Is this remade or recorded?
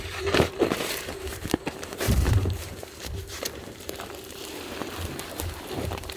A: remade